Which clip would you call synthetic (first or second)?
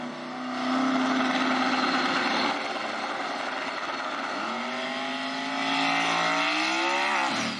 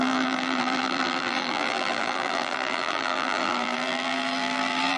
second